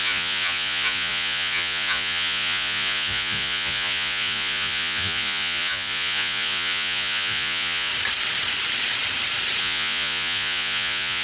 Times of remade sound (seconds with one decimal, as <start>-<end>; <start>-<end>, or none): 0.0-7.9; 9.6-11.2